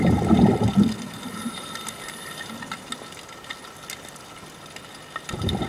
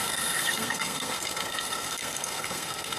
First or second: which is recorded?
first